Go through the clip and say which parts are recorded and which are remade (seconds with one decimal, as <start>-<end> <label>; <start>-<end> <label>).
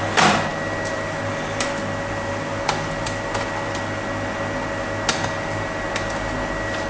0.0-6.9 recorded